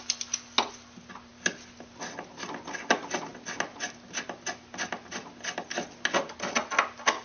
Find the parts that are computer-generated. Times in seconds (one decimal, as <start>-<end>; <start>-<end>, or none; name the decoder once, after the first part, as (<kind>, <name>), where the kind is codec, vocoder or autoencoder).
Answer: none